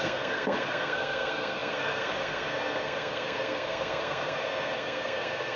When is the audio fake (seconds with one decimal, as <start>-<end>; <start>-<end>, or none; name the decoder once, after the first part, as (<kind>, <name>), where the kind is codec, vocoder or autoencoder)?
0.0-5.6 (codec, SNAC)